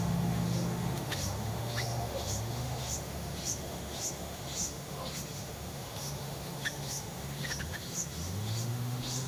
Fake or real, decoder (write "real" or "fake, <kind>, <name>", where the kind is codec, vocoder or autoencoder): fake, autoencoder, DAC-VAE